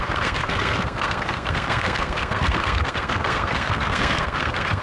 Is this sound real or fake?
fake